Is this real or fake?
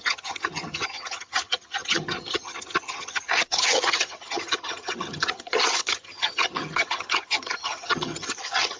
fake